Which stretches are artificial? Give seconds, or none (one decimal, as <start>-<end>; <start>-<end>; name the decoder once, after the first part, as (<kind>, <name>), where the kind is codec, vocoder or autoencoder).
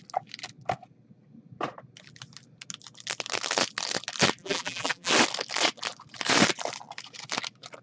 4.4-5.1 (vocoder, BigVGAN v2)